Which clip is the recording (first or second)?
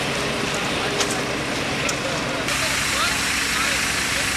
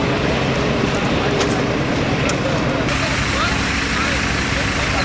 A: first